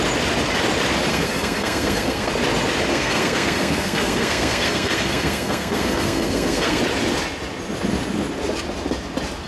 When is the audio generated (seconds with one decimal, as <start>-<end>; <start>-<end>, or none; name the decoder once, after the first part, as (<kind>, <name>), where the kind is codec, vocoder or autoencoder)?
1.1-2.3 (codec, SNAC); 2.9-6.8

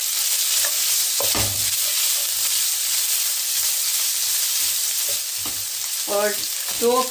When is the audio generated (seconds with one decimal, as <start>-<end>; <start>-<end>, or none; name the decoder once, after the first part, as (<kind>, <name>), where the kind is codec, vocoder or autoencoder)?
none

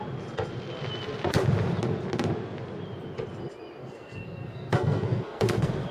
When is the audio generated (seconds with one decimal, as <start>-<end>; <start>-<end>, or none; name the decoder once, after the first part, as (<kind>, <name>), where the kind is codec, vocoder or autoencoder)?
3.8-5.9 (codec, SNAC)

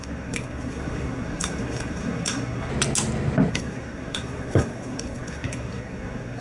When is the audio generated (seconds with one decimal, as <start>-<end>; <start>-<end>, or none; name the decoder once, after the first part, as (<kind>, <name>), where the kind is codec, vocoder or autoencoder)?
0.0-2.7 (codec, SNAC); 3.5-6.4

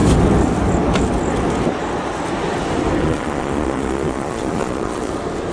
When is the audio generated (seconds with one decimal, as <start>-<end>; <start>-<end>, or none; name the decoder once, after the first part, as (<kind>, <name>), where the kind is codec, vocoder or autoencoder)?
3.0-5.1 (vocoder, Vocos)

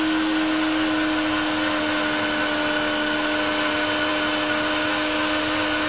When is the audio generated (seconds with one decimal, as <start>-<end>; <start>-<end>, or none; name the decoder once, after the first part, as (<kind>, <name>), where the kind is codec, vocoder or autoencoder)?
none

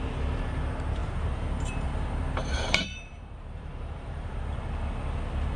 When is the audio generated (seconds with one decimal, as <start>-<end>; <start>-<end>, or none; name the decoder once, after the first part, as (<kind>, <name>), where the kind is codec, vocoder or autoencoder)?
1.0-4.4 (vocoder, BigVGAN v2)